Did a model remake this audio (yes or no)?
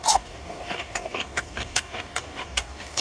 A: yes